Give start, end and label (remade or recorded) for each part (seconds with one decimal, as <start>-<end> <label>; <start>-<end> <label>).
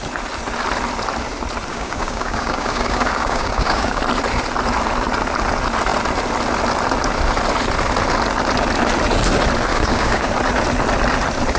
0.0-1.7 recorded; 1.7-4.0 remade; 4.0-9.7 recorded; 9.7-10.3 remade; 10.3-11.6 recorded